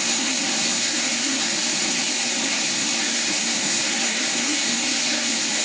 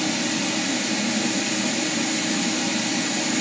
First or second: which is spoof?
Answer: first